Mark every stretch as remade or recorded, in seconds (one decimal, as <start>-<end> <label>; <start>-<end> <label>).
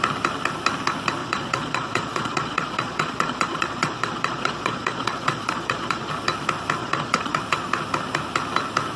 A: 0.0-1.2 recorded; 1.2-6.1 remade; 6.1-6.8 recorded; 6.8-7.4 remade; 7.4-9.0 recorded